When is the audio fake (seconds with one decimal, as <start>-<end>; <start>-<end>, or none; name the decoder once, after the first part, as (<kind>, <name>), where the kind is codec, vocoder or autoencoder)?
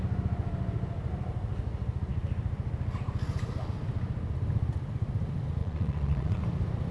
5.6-6.4 (vocoder, Vocos)